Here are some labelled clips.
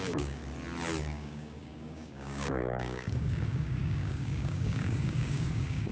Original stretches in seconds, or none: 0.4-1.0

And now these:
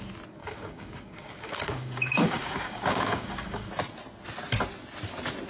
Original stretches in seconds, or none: 0.0-0.4; 3.7-5.5